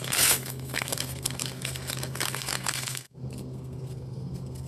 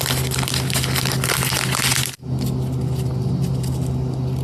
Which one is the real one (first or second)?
second